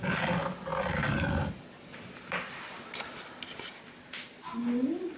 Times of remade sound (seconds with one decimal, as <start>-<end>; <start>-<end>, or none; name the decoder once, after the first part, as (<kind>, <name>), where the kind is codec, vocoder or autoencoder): none